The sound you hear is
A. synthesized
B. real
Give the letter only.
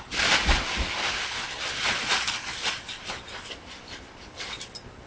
B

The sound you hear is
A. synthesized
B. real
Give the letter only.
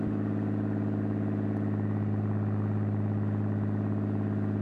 B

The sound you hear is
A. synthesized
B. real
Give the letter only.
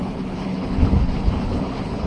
A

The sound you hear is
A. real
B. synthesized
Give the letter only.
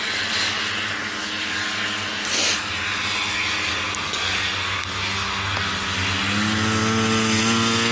A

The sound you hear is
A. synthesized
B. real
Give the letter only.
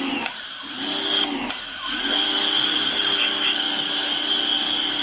B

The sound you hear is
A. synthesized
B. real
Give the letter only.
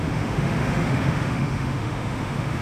A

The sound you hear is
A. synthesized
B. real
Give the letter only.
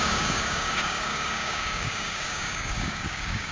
A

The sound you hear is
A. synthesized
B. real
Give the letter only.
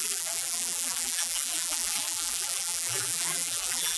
A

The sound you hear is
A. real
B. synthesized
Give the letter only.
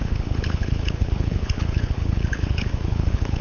B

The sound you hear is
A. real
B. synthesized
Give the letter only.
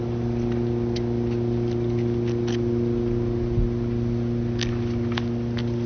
A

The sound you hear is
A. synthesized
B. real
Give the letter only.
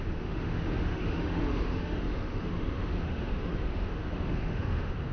A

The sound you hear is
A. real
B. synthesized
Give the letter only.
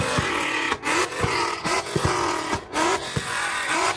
B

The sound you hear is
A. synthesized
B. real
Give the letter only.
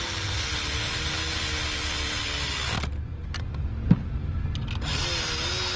B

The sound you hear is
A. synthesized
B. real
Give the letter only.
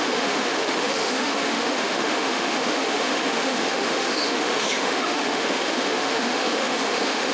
A